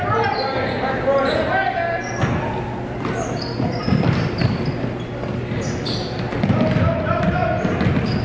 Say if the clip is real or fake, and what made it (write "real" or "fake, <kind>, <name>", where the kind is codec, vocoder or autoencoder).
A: real